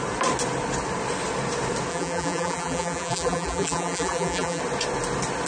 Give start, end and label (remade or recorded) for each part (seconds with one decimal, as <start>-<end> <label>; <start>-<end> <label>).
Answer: 0.0-1.9 recorded; 1.9-4.6 remade; 4.6-5.5 recorded